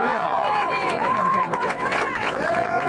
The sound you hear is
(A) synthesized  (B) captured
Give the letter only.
A